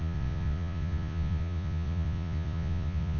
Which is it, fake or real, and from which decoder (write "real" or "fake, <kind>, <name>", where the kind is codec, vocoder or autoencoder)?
fake, vocoder, Vocos